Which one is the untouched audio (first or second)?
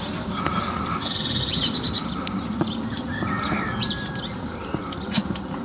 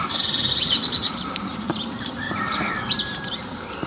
first